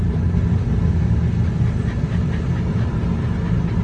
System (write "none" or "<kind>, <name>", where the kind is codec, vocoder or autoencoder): none